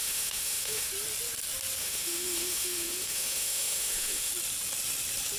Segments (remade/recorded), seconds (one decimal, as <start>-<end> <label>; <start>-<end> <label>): 0.0-0.9 remade; 0.9-1.8 recorded; 1.8-4.3 remade; 4.3-5.4 recorded